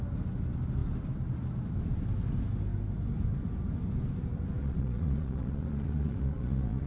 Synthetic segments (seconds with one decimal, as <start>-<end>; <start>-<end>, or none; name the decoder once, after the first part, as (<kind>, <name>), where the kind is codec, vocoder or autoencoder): 4.6-6.9 (vocoder, Vocos)